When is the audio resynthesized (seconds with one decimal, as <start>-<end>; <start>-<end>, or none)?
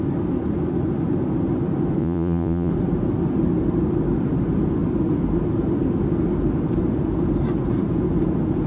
2.0-2.7